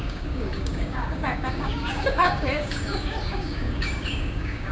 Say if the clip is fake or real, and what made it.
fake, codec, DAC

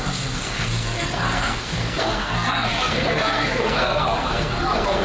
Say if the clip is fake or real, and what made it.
fake, codec, SNAC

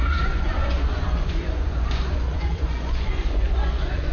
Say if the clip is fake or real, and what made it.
fake, vocoder, Vocos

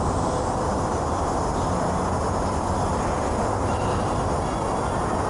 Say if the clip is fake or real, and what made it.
real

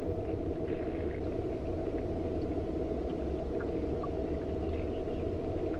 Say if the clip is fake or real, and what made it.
real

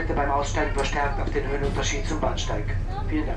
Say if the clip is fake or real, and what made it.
real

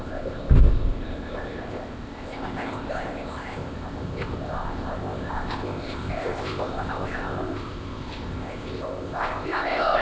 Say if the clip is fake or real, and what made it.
fake, codec, ZipCodec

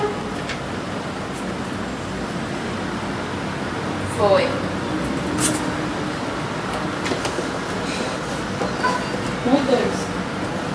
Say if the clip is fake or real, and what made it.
real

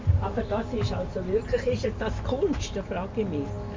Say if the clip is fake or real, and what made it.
real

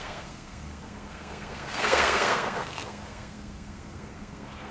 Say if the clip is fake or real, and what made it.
fake, codec, SNAC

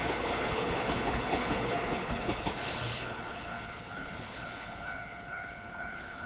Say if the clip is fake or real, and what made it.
fake, codec, HILCodec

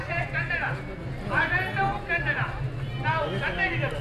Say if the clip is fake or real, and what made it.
real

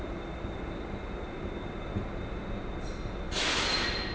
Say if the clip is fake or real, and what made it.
real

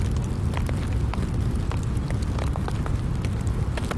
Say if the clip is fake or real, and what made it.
real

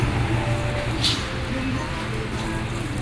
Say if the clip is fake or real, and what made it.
real